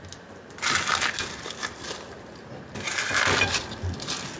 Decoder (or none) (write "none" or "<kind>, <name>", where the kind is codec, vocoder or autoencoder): none